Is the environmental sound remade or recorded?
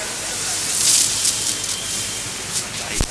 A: recorded